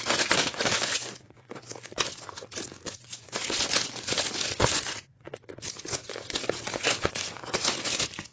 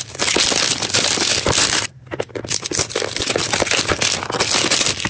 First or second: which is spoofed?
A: first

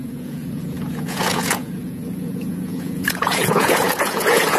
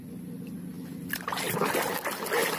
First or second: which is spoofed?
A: first